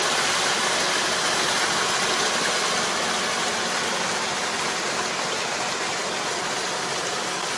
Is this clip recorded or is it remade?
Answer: recorded